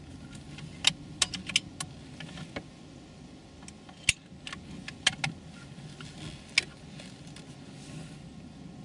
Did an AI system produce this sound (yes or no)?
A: no